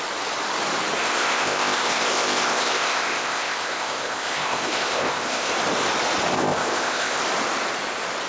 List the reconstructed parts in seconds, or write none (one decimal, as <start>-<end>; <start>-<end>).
1.0-5.5; 6.3-7.2